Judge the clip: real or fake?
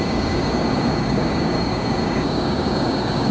fake